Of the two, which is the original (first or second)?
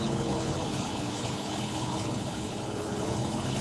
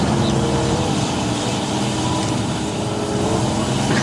second